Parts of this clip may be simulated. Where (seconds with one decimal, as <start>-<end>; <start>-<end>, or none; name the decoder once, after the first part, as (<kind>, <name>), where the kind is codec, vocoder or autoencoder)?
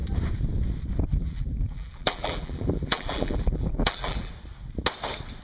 1.1-4.3 (vocoder, BigVGAN v2)